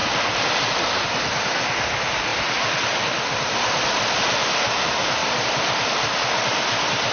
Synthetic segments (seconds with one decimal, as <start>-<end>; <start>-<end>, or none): none